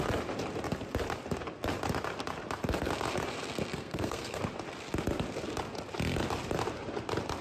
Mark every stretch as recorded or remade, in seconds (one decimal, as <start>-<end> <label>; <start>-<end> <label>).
0.0-3.7 recorded; 3.7-4.4 remade; 4.4-7.4 recorded